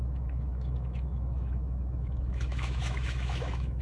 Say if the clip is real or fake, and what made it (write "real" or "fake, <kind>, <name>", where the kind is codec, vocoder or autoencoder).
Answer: fake, autoencoder, DAC-VAE